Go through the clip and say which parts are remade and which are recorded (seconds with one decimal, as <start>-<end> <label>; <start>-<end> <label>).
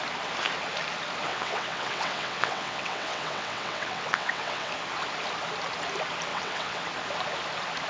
0.0-1.3 recorded; 1.3-4.7 remade; 4.7-6.3 recorded; 6.3-6.8 remade; 6.8-7.9 recorded